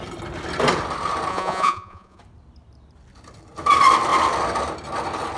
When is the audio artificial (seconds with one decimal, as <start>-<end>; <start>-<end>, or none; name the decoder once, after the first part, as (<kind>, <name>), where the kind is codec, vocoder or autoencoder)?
1.3-2.2 (vocoder, Vocos)